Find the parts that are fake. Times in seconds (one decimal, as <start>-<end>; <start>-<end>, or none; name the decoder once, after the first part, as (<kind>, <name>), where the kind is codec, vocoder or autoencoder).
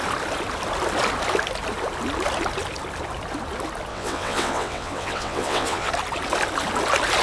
3.9-5.9 (vocoder, WaveNeXt)